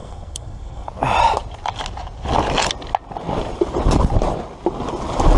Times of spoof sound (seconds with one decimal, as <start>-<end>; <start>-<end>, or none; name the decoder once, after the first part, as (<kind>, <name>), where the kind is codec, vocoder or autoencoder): 0.0-0.9 (codec, SNAC)